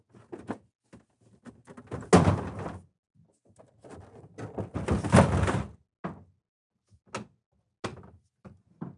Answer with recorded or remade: recorded